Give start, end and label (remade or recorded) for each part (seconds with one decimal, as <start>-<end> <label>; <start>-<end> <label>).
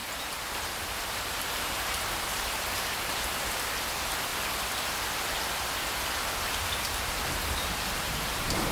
0.0-4.3 remade; 4.3-7.0 recorded; 7.0-8.7 remade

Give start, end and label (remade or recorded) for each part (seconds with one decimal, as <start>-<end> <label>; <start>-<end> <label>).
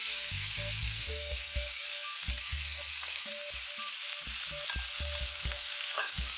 0.0-3.3 remade; 3.3-5.2 recorded; 5.2-6.4 remade